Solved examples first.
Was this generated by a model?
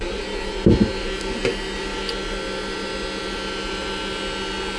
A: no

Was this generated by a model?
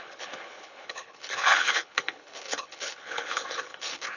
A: yes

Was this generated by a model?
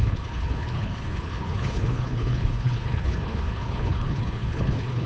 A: yes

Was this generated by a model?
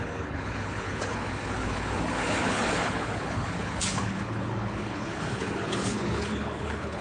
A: yes